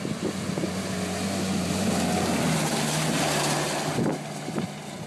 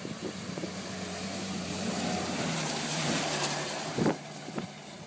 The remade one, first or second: second